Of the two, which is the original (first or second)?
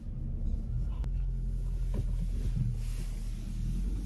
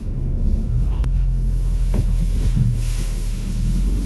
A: first